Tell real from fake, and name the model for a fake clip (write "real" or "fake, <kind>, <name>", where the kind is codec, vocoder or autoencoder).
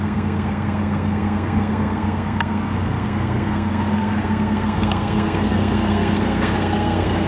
fake, codec, SNAC